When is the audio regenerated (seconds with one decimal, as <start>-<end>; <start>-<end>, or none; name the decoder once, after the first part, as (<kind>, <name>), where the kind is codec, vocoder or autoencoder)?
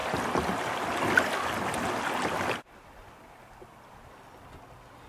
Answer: none